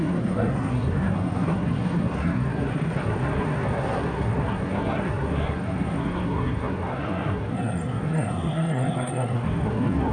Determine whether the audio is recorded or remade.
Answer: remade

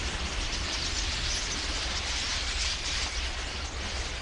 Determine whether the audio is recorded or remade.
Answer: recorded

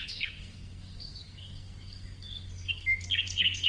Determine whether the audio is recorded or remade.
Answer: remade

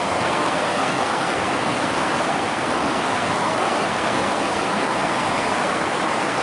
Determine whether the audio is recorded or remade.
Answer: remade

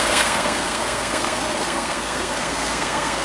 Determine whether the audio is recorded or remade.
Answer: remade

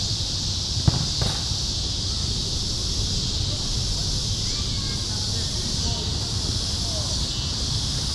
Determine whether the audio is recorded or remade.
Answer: recorded